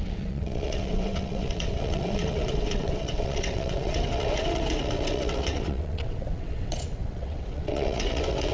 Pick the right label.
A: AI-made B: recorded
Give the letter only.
A